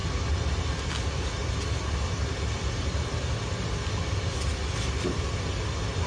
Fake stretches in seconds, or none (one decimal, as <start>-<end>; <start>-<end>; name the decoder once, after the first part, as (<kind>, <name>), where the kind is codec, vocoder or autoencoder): 0.8-1.4 (vocoder, BigVGAN v2); 1.9-6.1